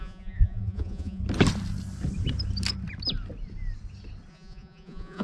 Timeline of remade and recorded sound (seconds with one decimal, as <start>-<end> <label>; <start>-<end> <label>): 0.0-1.2 remade; 1.2-4.3 recorded; 4.3-5.2 remade